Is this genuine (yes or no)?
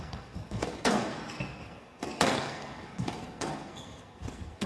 no